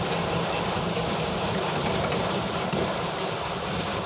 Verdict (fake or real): real